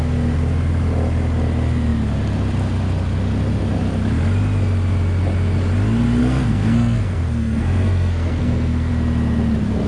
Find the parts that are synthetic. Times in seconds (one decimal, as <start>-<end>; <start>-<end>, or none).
6.2-8.9